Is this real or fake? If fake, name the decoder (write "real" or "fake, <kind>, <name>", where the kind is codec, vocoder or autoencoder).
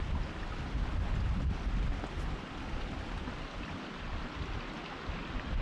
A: real